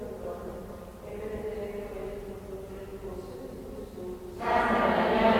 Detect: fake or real real